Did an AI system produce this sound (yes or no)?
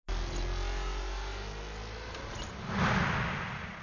no